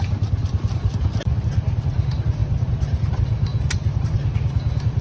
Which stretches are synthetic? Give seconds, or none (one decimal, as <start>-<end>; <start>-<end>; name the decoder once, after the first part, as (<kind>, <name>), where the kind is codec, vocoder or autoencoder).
0.0-3.5 (vocoder, BigVGAN v2); 4.0-5.0